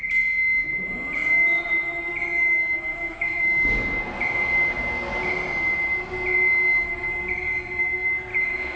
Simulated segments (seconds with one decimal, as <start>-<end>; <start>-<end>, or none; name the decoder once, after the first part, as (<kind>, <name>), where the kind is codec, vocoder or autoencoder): 2.6-3.7 (autoencoder, DAC-VAE); 8.3-8.8

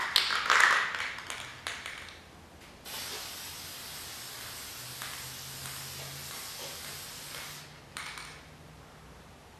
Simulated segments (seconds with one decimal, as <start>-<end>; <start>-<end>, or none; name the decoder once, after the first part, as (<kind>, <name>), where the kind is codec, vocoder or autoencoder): none

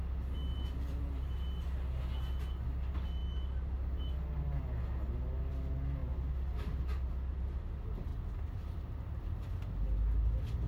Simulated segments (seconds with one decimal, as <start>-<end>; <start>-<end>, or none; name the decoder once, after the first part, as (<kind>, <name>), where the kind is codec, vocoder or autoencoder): none